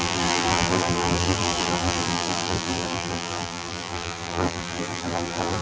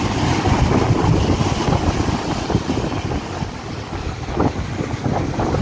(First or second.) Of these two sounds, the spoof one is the first